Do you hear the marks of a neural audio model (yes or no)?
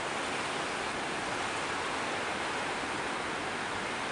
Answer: no